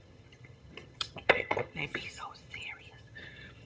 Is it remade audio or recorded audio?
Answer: remade